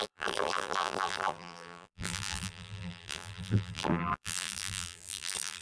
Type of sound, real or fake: fake